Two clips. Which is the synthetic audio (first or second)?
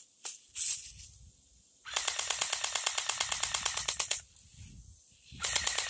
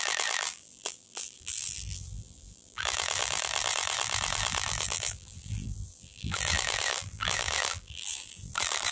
second